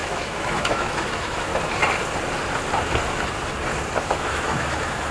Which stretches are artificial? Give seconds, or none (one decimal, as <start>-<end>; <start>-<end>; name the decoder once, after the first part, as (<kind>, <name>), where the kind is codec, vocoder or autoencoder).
0.0-1.5 (autoencoder, DAC-VAE); 4.0-5.1